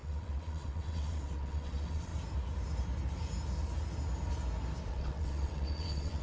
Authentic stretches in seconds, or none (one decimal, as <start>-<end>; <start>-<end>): 2.1-4.9